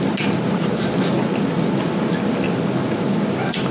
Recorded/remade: recorded